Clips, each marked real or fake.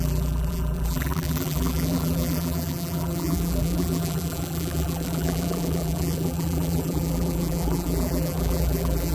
fake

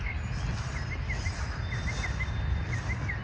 real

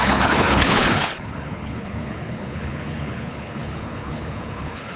fake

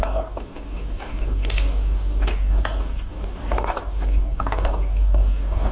fake